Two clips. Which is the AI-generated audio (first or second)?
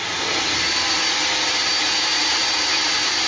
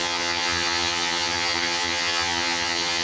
second